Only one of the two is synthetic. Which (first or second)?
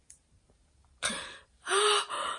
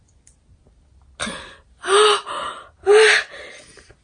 first